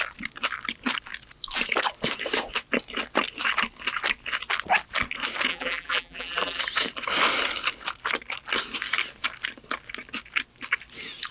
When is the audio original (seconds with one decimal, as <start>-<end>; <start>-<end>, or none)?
0.0-5.5; 6.6-11.3